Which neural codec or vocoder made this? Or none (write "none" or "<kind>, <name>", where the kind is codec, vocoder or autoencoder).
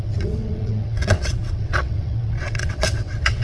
vocoder, WaveNeXt